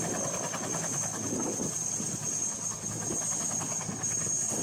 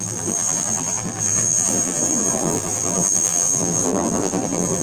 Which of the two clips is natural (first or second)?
first